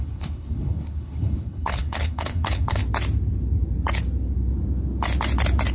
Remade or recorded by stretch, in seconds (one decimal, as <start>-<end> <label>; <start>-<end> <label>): 0.0-2.8 remade; 2.8-5.7 recorded